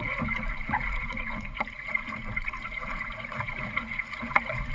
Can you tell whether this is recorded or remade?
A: remade